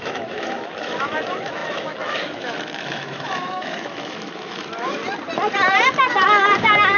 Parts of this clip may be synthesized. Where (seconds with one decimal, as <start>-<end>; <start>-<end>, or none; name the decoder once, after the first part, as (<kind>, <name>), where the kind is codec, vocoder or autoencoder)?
0.0-5.0 (autoencoder, DAC-VAE)